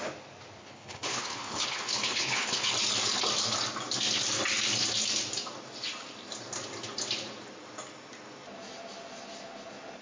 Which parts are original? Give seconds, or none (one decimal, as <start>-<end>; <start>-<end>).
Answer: 0.0-0.6; 2.7-10.0